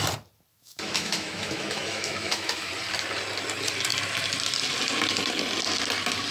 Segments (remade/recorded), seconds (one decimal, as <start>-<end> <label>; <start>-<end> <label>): 0.0-0.5 recorded; 0.5-2.7 remade; 2.7-6.3 recorded